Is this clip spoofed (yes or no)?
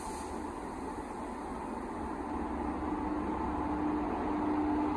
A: no